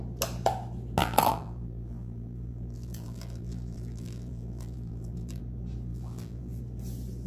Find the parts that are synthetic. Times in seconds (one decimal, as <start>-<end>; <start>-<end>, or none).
1.0-5.4; 5.9-6.6